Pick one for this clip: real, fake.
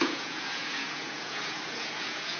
fake